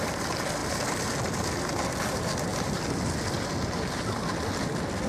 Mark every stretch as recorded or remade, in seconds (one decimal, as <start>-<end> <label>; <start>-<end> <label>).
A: 0.0-5.1 recorded